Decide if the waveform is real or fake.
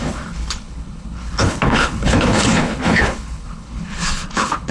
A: fake